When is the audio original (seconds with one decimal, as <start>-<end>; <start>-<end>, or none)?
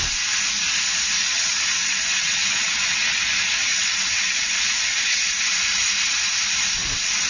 0.0-1.2; 3.2-3.7; 4.7-7.3